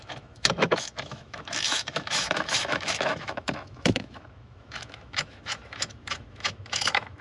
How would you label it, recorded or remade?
remade